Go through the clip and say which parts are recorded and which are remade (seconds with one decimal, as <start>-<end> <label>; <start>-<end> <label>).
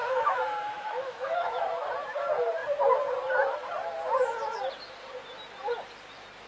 0.0-1.6 remade; 1.6-6.5 recorded